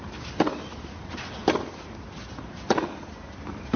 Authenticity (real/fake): real